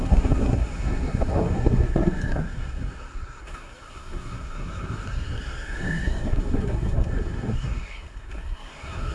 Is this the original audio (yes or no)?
no